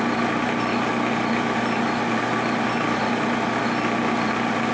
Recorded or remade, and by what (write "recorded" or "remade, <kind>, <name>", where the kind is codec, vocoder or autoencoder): recorded